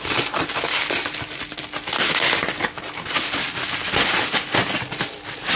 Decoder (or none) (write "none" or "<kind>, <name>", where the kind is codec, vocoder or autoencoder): none